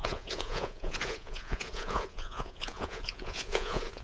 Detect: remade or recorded remade